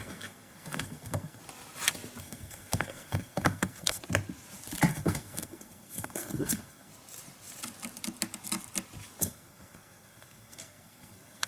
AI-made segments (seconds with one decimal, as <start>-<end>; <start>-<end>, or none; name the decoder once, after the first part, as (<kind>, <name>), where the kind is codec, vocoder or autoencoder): 0.0-1.4 (codec, SNAC); 2.2-4.0; 4.9-6.9; 9.2-11.5